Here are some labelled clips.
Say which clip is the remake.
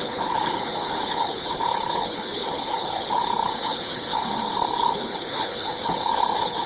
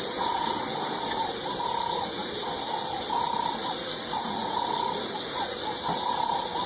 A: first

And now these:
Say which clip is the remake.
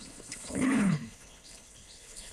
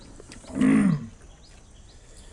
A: first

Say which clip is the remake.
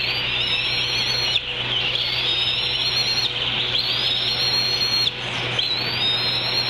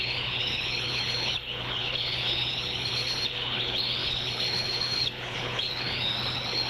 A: second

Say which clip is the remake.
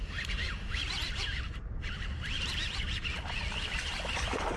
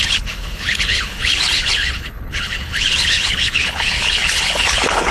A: second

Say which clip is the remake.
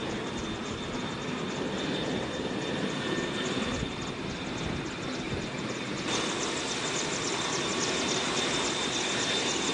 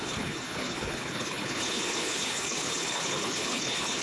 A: second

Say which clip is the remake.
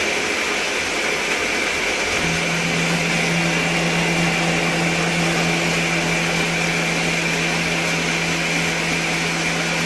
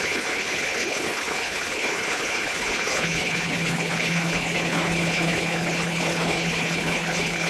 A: second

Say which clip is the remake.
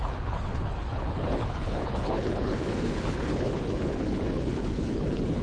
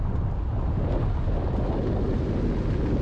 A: first